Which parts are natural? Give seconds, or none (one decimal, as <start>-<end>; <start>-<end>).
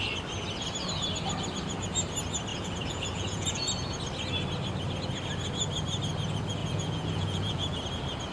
0.0-2.5; 4.0-6.6; 7.8-8.3